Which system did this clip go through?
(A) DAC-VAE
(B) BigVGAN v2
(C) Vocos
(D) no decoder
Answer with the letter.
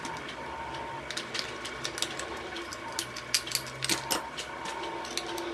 D